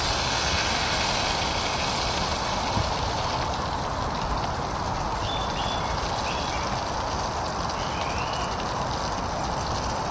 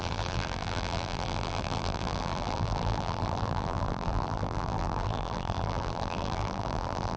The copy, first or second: second